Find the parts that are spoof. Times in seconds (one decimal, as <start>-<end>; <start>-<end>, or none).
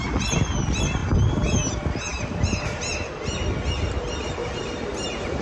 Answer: 4.4-5.4